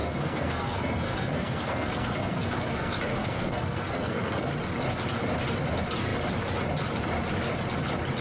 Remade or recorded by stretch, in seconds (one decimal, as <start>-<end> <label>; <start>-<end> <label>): 0.0-4.5 remade; 4.5-8.2 recorded